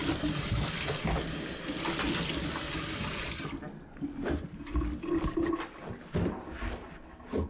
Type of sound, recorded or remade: recorded